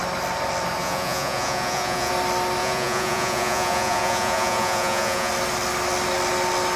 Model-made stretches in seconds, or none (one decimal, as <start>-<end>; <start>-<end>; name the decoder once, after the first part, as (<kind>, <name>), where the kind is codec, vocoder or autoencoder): 0.8-2.1 (vocoder, Vocos); 2.6-5.3